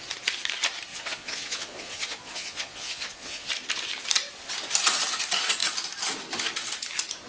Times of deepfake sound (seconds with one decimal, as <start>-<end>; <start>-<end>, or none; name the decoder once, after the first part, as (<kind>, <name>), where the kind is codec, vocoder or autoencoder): 0.9-3.5 (vocoder, Vocos)